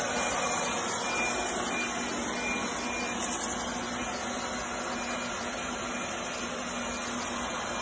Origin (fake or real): real